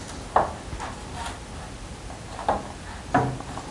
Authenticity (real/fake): real